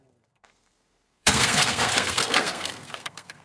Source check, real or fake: fake